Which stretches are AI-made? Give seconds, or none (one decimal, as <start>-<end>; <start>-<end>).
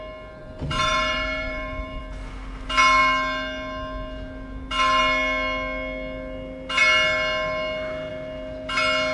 0.4-2.0